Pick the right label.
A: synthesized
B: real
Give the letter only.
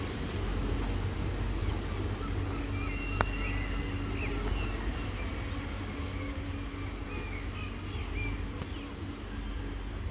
B